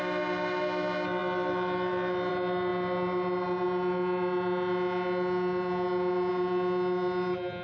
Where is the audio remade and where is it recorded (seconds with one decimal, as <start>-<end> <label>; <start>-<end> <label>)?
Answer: 0.0-7.6 recorded

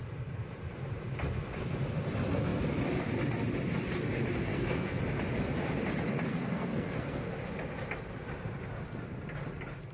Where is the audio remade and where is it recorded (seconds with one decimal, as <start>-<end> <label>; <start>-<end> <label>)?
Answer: 0.0-4.4 recorded; 4.4-5.0 remade; 5.0-6.3 recorded; 6.3-7.3 remade; 7.3-9.9 recorded

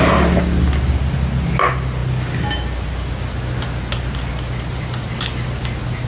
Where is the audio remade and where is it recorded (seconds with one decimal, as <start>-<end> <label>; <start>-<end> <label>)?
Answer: 0.0-6.1 recorded

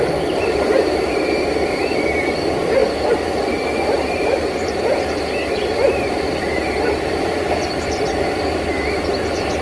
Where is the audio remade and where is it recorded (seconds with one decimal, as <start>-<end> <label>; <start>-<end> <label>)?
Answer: 0.0-7.9 remade; 7.9-9.1 recorded; 9.1-9.6 remade

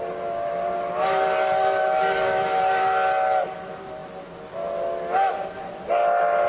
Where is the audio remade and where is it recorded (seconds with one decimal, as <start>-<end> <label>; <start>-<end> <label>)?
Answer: 0.0-6.5 recorded

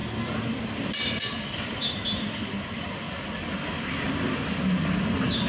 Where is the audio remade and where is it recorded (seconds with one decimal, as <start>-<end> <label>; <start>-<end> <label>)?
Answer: 0.0-5.5 recorded

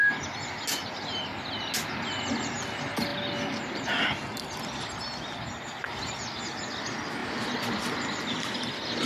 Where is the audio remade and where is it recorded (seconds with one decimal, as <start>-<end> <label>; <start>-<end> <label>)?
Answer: 0.0-9.1 recorded

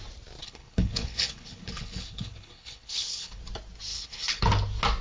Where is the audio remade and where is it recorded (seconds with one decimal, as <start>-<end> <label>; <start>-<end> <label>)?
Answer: 0.0-0.4 recorded; 0.4-3.4 remade; 3.4-3.9 recorded; 3.9-4.4 remade; 4.4-5.0 recorded